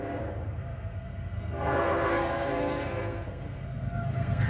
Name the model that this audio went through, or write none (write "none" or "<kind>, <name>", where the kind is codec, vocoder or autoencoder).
codec, SNAC